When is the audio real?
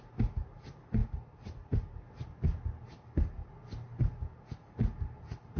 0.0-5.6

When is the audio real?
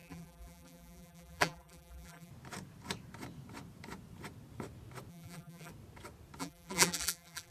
2.3-5.1; 5.7-6.4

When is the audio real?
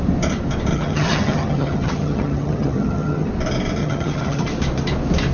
0.0-0.7; 3.3-3.8; 4.5-5.3